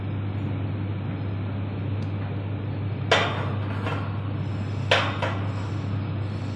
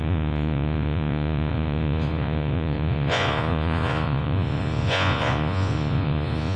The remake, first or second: second